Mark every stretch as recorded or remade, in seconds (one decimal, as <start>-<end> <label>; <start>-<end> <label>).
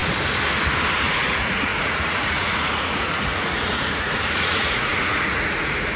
0.0-0.9 recorded; 0.9-6.0 remade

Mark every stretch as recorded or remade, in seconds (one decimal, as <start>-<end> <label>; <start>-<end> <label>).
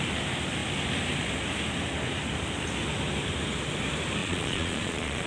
0.0-4.2 recorded; 4.2-5.3 remade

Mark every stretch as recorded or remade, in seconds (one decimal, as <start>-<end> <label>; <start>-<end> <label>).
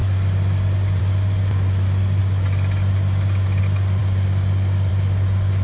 0.0-5.6 recorded